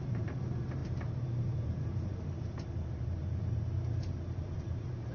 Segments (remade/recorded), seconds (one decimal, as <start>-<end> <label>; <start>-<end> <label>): 0.0-5.1 remade